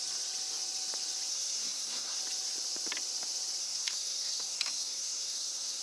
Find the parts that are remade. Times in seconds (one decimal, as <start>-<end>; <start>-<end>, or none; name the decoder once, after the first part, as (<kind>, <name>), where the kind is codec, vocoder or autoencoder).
1.3-2.2 (codec, SNAC); 3.6-5.8